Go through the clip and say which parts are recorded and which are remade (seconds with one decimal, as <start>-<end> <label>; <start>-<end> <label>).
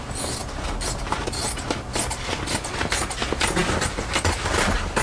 0.0-5.0 recorded